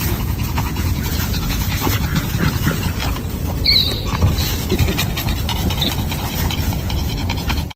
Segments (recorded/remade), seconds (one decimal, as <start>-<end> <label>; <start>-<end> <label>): 0.0-2.1 remade; 2.1-6.8 recorded; 6.8-7.8 remade